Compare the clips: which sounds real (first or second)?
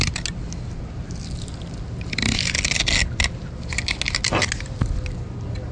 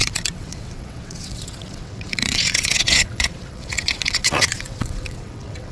first